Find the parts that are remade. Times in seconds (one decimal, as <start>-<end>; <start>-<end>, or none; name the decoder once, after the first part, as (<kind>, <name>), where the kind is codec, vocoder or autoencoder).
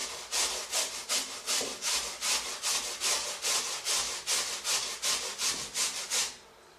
none